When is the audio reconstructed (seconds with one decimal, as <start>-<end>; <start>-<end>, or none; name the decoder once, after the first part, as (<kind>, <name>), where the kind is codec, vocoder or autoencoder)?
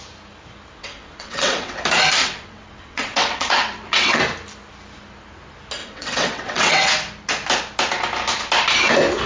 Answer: 0.8-1.8 (vocoder, WaveNeXt); 2.2-4.2; 5.8-6.9